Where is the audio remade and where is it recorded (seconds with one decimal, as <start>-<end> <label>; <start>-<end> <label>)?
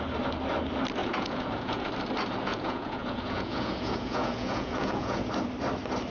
0.0-1.0 recorded; 1.0-1.9 remade; 1.9-2.5 recorded; 2.5-5.3 remade; 5.3-6.1 recorded